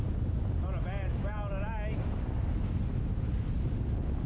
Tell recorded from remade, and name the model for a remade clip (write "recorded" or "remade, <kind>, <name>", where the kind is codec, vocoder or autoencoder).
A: recorded